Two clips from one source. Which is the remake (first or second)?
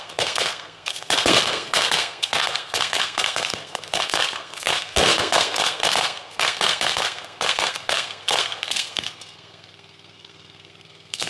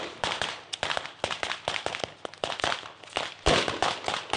first